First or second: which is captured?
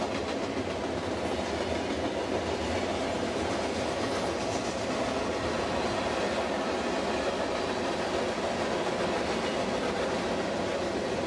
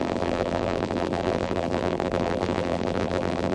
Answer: first